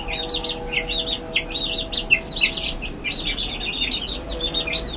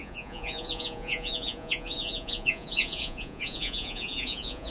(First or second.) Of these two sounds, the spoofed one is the second